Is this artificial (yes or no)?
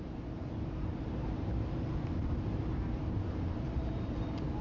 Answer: yes